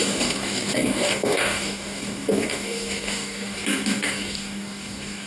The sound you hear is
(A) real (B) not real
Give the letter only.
B